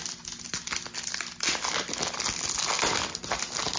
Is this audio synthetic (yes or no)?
no